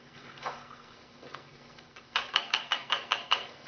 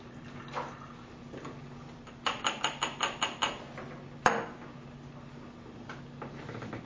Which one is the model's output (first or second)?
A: first